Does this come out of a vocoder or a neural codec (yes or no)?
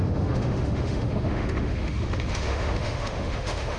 yes